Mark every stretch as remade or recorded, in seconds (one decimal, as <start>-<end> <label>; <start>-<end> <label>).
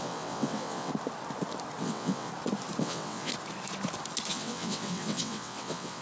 0.0-0.9 remade; 0.9-1.8 recorded; 1.8-2.3 remade; 2.3-2.8 recorded; 2.8-3.3 remade; 3.3-4.3 recorded; 4.3-6.0 remade